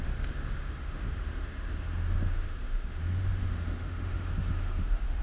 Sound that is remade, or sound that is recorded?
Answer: remade